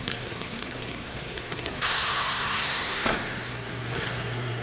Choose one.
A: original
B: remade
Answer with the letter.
B